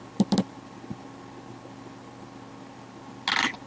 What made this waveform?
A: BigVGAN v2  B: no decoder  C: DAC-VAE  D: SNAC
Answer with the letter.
B